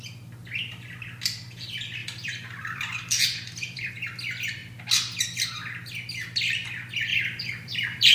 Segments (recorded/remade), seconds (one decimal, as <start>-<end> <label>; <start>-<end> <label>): 0.0-2.0 recorded; 2.0-3.9 remade; 3.9-7.1 recorded; 7.1-8.1 remade